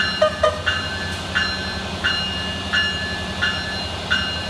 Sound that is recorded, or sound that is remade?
recorded